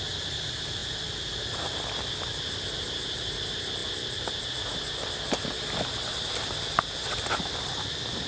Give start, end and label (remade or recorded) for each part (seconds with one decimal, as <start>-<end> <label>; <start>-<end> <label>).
0.0-8.3 recorded